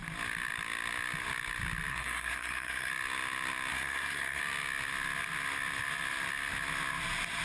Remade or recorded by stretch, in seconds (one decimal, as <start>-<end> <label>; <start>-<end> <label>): 0.0-1.9 recorded; 1.9-2.9 remade; 2.9-3.7 recorded; 3.7-4.4 remade; 4.4-7.4 recorded